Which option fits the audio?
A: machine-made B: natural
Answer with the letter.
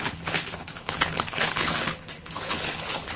A